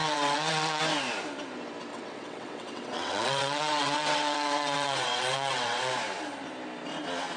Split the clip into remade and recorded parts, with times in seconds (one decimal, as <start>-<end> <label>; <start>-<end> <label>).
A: 0.0-0.8 remade; 0.8-1.9 recorded; 1.9-5.9 remade; 5.9-7.4 recorded

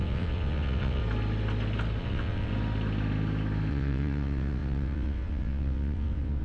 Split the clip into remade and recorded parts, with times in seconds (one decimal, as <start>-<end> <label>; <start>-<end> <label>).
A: 0.0-1.0 remade; 1.0-2.0 recorded; 2.0-2.5 remade; 2.5-3.7 recorded; 3.7-6.4 remade

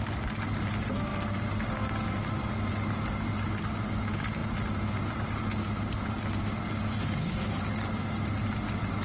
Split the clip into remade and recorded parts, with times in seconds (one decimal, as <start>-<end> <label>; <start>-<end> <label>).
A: 0.0-9.0 recorded

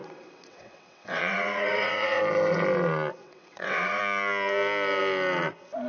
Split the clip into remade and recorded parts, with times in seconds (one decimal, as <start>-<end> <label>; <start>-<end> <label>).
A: 0.0-2.2 remade; 2.2-3.2 recorded; 3.2-4.0 remade; 4.0-5.9 recorded

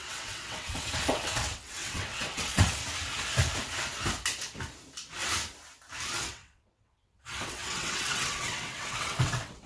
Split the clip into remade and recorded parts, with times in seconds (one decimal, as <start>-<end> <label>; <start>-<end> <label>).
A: 0.0-2.8 remade; 2.8-6.2 recorded; 6.2-9.7 remade

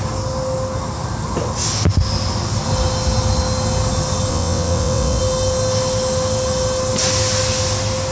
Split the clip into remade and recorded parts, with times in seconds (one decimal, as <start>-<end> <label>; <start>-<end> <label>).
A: 0.0-4.3 recorded; 4.3-5.2 remade; 5.2-8.1 recorded